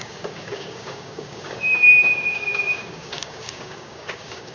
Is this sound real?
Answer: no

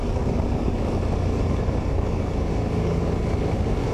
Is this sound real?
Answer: no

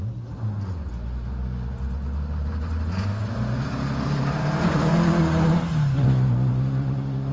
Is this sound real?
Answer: yes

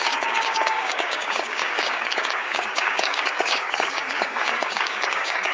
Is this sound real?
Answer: no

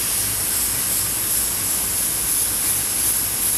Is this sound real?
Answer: yes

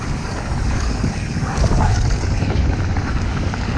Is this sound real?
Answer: no